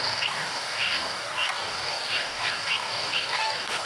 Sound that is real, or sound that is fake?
fake